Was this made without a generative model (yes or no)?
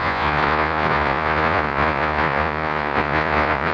no